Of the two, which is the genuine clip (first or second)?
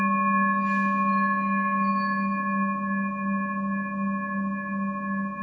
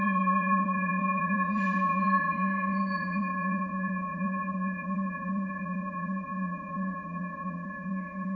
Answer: first